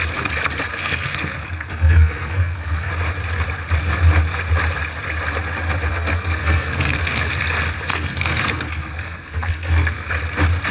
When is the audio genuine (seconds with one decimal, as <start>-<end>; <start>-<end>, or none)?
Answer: 0.0-0.7; 2.9-5.9; 7.3-7.9; 10.1-10.7